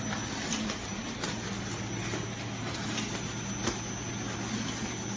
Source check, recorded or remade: recorded